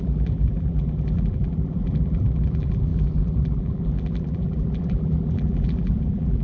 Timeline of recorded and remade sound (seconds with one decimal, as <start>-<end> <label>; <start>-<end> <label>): 0.0-6.4 remade